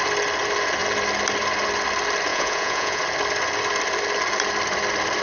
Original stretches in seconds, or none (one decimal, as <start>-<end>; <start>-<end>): 0.0-2.3; 3.0-5.2